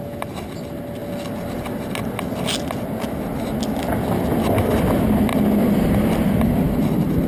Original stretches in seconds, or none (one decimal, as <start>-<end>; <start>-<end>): 0.0-7.3